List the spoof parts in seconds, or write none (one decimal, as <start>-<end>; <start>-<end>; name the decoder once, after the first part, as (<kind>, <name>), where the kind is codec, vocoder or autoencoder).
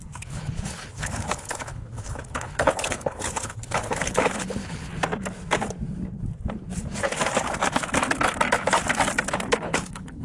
0.0-4.9 (codec, HILCodec); 9.6-10.2